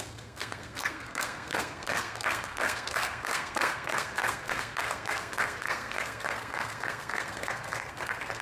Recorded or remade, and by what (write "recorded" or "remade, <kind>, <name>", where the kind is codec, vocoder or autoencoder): remade, codec, SNAC